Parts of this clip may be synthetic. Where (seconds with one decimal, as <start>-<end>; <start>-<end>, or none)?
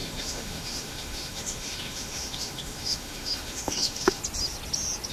0.0-4.2